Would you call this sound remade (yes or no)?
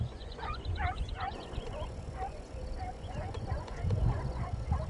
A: yes